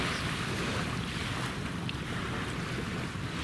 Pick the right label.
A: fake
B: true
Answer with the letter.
B